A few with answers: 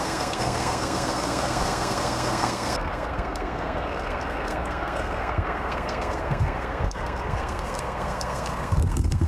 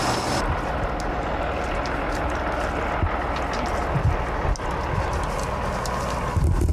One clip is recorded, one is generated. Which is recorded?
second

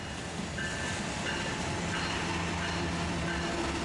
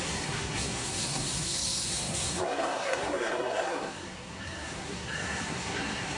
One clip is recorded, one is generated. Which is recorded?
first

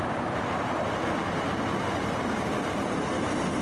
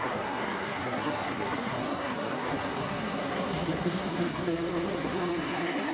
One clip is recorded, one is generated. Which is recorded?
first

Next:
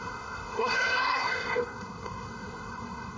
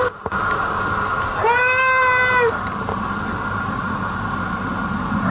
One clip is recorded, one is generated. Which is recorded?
second